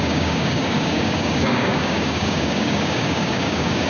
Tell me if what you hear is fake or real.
fake